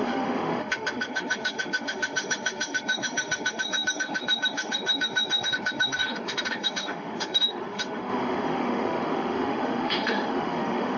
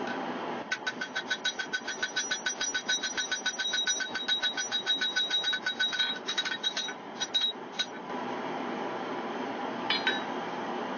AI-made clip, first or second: first